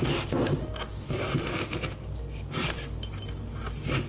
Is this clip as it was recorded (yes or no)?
yes